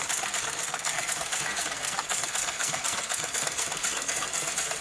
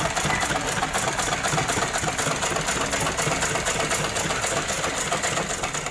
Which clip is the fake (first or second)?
first